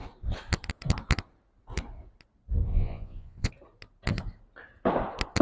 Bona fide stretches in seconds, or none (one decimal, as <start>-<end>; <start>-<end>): 0.0-2.7; 3.5-5.4